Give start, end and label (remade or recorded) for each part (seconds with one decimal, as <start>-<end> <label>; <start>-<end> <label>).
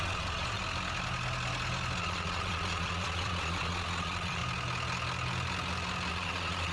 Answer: 0.0-0.6 remade; 0.6-2.0 recorded; 2.0-4.4 remade; 4.4-6.1 recorded; 6.1-6.7 remade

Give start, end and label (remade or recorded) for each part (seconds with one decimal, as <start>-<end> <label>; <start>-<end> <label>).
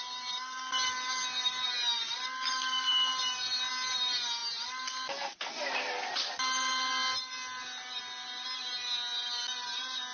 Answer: 0.0-10.1 recorded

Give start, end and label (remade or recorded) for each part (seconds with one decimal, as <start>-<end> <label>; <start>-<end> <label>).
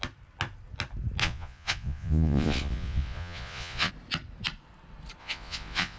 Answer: 0.0-1.2 recorded; 1.2-3.9 remade; 3.9-5.2 recorded; 5.2-6.0 remade